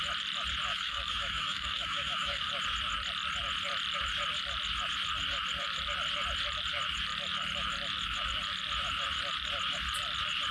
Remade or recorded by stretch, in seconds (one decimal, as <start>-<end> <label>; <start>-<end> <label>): 0.0-0.7 recorded; 0.7-2.5 remade; 2.5-10.5 recorded